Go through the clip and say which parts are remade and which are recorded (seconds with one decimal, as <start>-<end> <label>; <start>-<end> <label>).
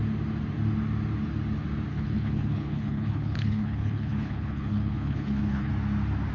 0.0-1.9 recorded; 1.9-5.7 remade; 5.7-6.3 recorded